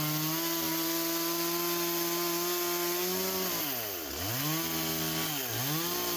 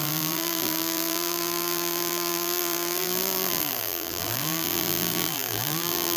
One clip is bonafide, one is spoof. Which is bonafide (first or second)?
first